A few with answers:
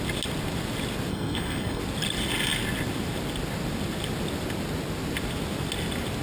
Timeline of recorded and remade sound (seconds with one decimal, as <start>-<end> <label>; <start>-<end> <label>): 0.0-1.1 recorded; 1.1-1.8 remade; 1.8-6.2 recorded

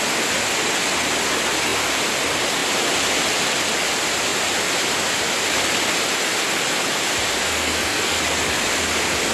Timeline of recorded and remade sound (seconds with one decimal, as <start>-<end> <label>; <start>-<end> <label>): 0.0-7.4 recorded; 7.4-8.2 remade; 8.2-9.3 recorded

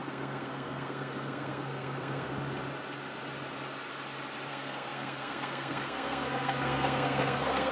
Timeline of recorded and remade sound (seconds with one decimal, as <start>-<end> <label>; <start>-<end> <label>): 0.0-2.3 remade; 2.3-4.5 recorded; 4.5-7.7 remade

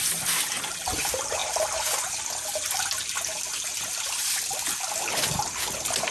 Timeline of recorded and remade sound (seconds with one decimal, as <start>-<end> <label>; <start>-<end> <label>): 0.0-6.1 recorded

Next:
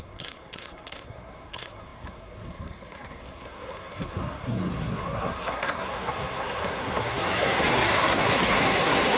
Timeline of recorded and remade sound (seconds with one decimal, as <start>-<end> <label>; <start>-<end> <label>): 0.0-9.2 remade

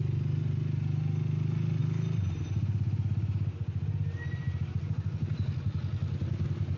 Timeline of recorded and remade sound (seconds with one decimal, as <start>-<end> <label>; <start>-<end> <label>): 0.0-6.8 recorded

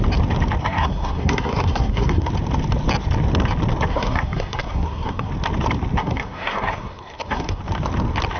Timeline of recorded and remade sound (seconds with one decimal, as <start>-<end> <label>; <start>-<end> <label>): 0.0-0.6 recorded; 0.6-2.3 remade; 2.3-3.9 recorded; 3.9-5.3 remade; 5.3-6.0 recorded; 6.0-7.6 remade; 7.6-8.4 recorded